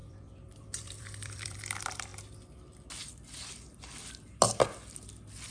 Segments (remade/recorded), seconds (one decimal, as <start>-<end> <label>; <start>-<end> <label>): 0.0-2.1 remade; 2.1-5.5 recorded